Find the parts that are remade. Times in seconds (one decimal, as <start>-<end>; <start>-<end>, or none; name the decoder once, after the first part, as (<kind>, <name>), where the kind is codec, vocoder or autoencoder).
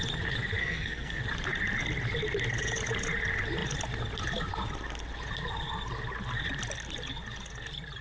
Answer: 0.6-1.2 (codec, SNAC)